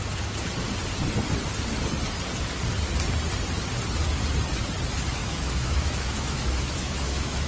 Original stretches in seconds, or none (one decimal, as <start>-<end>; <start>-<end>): 0.0-5.2